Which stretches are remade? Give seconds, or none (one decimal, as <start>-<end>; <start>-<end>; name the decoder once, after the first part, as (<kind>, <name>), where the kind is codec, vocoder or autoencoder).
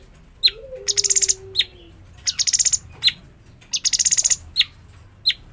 none